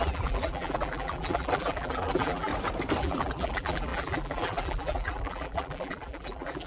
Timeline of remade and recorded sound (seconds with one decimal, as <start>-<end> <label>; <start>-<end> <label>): 0.0-2.5 remade; 2.5-3.0 recorded; 3.0-6.7 remade